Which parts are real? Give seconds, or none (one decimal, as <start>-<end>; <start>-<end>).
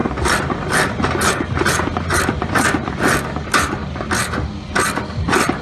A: 0.0-5.6